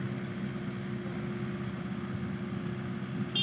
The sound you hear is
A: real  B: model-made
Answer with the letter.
A